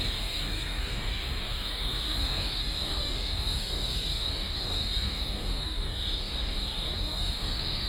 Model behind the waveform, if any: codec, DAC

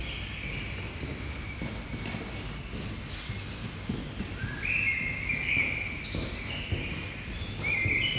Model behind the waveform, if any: none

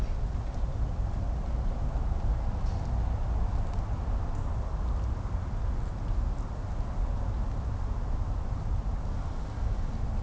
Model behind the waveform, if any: none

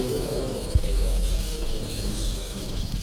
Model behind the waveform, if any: codec, DAC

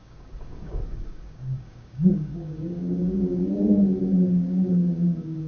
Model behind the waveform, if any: codec, DAC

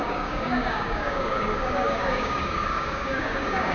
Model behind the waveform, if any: codec, DAC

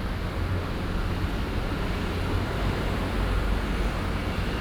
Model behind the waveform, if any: none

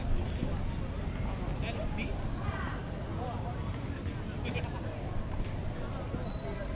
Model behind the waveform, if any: none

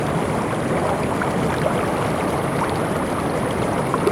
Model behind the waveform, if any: none